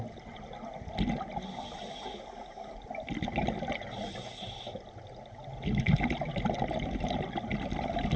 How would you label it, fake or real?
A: real